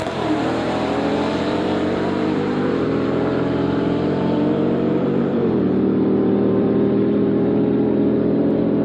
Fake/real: fake